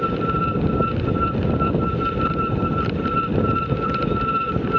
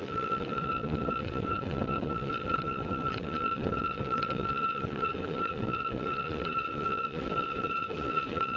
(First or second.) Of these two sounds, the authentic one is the first